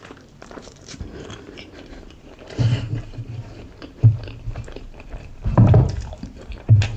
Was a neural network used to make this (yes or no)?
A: yes